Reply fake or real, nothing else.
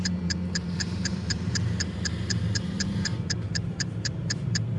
fake